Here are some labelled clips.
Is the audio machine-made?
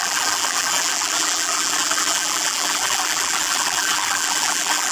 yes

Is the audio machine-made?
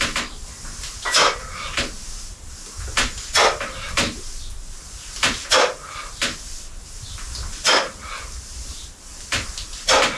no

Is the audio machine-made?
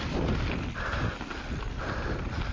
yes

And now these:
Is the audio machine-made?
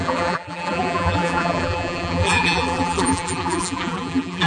yes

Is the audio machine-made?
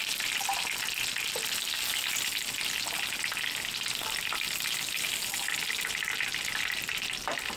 no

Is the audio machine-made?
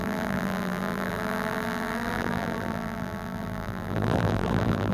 yes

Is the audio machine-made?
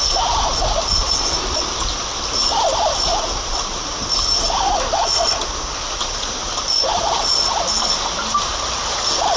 no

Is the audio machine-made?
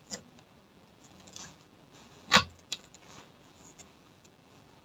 yes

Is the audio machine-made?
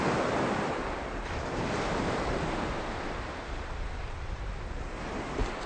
yes